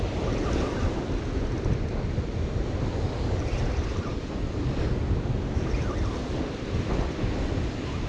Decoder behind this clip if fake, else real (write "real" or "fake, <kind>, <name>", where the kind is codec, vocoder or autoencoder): real